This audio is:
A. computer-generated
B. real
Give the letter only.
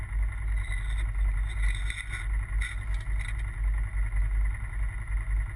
B